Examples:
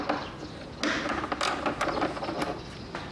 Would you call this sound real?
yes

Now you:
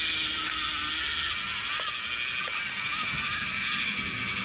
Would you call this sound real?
yes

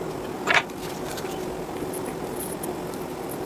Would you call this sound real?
no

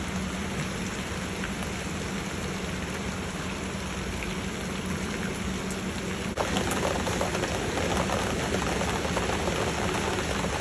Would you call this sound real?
yes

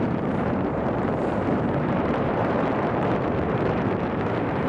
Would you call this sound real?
no